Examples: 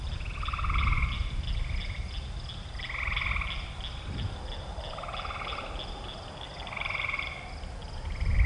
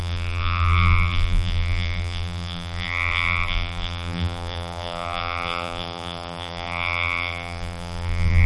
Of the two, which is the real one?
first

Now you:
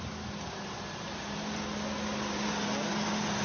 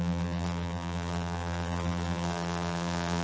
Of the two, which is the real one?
first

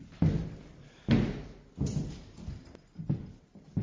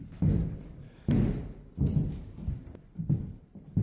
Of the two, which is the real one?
first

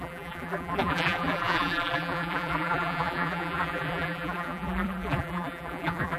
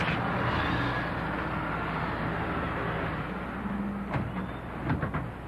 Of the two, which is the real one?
second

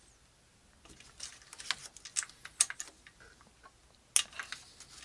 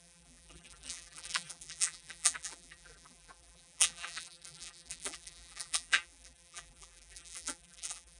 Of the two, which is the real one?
first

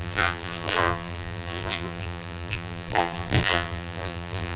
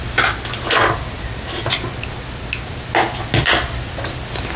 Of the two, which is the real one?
second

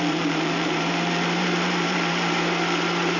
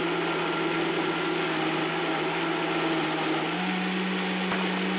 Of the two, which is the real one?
second